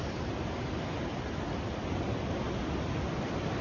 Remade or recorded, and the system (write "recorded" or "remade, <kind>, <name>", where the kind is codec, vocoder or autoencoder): recorded